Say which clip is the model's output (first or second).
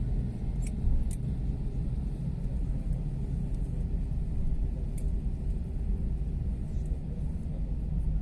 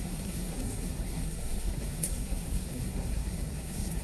second